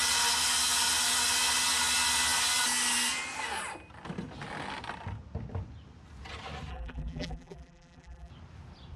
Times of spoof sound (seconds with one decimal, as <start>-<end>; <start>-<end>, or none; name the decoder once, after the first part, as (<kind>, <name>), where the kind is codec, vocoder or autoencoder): 6.7-8.3 (vocoder, BigVGAN v2)